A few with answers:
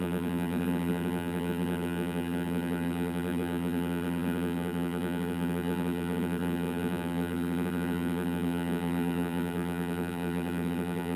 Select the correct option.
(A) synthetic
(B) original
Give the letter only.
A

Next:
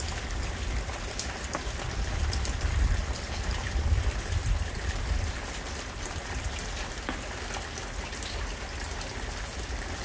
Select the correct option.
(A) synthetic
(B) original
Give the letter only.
B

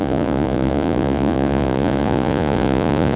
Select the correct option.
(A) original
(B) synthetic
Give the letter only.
B